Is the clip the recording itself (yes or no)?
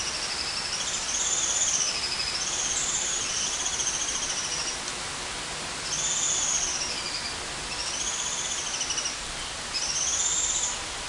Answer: yes